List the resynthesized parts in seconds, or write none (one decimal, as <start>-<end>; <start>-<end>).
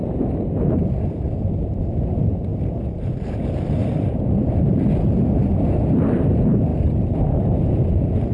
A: 0.0-1.8; 2.5-5.9; 6.7-7.2